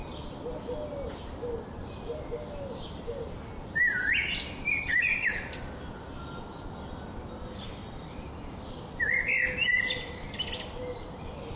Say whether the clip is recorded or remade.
recorded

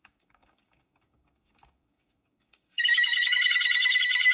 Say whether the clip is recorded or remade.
remade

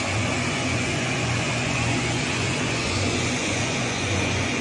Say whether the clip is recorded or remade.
remade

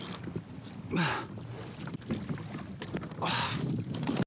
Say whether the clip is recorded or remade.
recorded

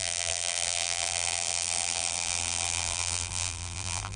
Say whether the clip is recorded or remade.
remade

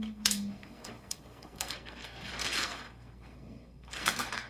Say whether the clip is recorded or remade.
remade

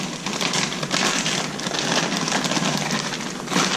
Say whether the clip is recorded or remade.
recorded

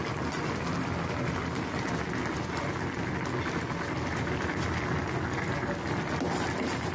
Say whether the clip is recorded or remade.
recorded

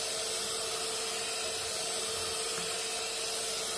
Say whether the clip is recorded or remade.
recorded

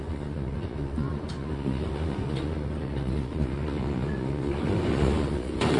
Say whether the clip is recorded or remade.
remade